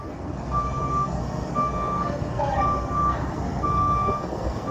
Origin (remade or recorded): remade